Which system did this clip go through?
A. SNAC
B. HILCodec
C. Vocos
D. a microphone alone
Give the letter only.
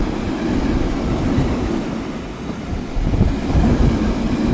D